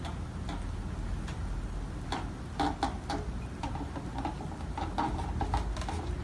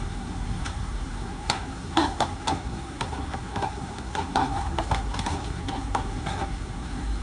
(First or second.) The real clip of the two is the first